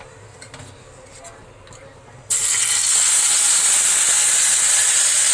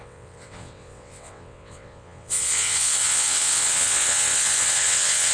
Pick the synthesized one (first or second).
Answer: second